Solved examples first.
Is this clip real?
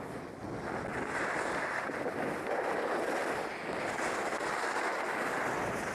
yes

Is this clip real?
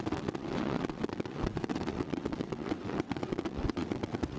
no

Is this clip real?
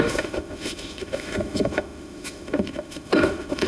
no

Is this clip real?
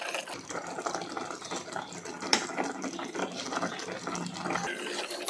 yes